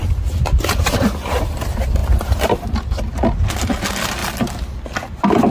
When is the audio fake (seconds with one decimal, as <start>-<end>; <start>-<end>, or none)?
none